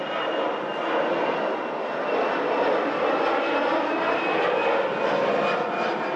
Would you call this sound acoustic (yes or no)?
yes